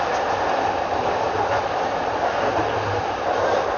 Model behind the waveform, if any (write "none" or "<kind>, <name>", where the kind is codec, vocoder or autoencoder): none